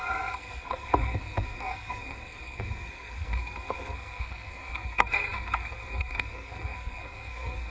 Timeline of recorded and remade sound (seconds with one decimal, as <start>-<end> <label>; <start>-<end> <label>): 0.0-7.7 remade